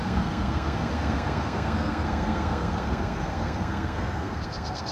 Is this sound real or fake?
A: fake